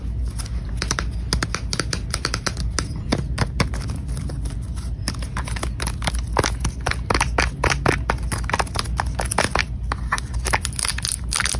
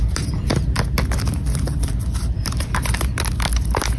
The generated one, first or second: second